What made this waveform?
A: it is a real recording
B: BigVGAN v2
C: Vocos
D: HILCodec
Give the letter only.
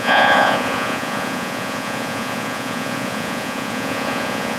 C